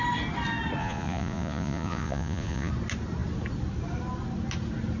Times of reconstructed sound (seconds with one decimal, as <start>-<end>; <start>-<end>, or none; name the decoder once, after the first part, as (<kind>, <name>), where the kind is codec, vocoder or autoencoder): 0.8-2.7 (vocoder, Vocos)